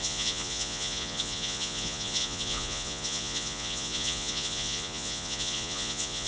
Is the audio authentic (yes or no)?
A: no